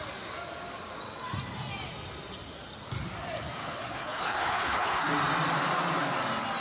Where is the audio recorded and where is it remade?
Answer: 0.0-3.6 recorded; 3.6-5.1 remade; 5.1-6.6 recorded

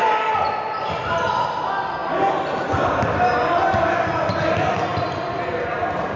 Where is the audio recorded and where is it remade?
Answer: 0.0-6.2 recorded

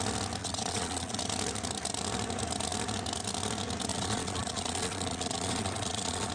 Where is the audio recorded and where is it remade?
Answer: 0.0-0.4 recorded; 0.4-1.2 remade; 1.2-3.9 recorded; 3.9-6.3 remade

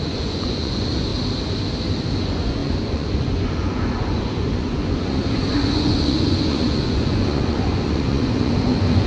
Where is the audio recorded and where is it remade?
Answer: 0.0-1.1 remade; 1.1-2.2 recorded; 2.2-9.1 remade

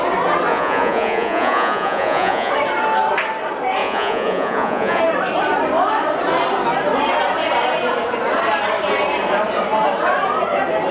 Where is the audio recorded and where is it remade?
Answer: 0.0-0.5 recorded; 0.5-2.5 remade; 2.5-3.8 recorded; 3.8-5.0 remade; 5.0-10.9 recorded

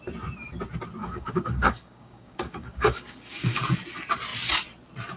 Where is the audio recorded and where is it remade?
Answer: 0.0-1.0 recorded; 1.0-3.6 remade; 3.6-5.2 recorded

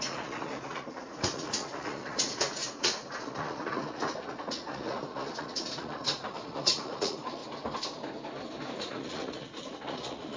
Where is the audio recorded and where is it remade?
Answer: 0.0-7.4 remade; 7.4-8.8 recorded; 8.8-10.4 remade